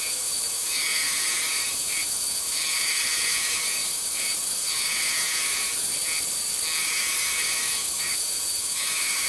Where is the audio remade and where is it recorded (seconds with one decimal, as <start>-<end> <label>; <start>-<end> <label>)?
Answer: 0.0-5.9 remade; 5.9-6.8 recorded; 6.8-9.3 remade

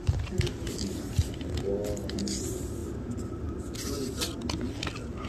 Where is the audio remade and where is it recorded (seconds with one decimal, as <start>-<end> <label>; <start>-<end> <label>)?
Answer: 0.0-5.3 recorded

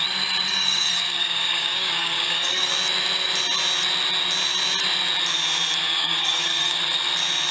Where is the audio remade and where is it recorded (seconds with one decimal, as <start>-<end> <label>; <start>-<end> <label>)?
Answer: 0.0-0.5 recorded; 0.5-2.7 remade; 2.7-5.8 recorded; 5.8-6.8 remade; 6.8-7.5 recorded

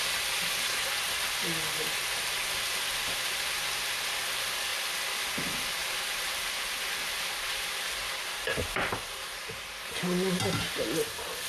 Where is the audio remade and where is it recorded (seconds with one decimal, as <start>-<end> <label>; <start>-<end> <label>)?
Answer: 0.0-5.8 recorded; 5.8-9.5 remade; 9.5-11.5 recorded

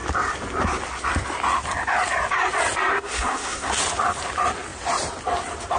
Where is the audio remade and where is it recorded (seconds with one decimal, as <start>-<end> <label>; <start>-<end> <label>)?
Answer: 0.0-2.9 recorded; 2.9-3.7 remade; 3.7-5.8 recorded

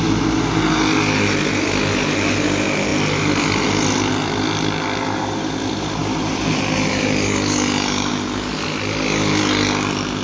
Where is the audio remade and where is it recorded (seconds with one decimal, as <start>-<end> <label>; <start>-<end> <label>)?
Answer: 0.0-10.2 recorded

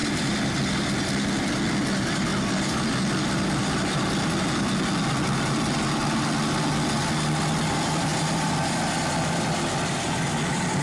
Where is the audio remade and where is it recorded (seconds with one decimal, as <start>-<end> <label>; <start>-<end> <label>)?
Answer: 0.0-10.8 recorded

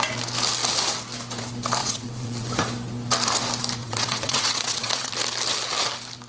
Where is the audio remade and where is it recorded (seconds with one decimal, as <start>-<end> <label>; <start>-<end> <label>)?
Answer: 0.0-1.8 recorded; 1.8-2.5 remade; 2.5-3.8 recorded; 3.8-5.1 remade; 5.1-6.3 recorded